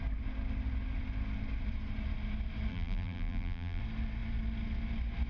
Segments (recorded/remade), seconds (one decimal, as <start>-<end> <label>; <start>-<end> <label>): 0.0-2.7 recorded; 2.7-3.8 remade; 3.8-5.3 recorded